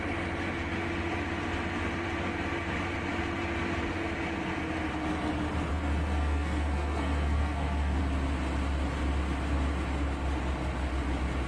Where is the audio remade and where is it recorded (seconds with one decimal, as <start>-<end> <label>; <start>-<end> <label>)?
0.0-5.7 recorded; 5.7-8.0 remade; 8.0-11.5 recorded